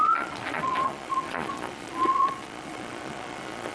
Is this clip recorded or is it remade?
remade